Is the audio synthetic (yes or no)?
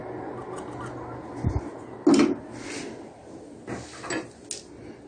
no